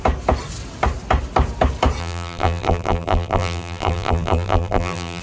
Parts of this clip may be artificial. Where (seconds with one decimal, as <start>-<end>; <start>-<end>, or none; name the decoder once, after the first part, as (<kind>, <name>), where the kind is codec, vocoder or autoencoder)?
2.0-5.2 (vocoder, BigVGAN v2)